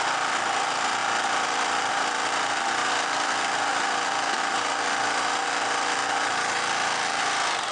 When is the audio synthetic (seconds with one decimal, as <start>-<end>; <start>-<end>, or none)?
none